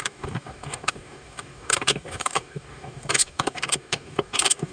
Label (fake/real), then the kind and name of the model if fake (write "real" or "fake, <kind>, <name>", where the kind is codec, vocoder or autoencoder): fake, codec, DAC